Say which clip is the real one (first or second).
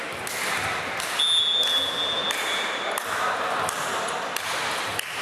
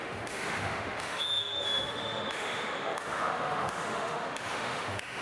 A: first